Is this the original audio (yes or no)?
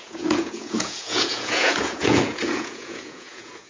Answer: no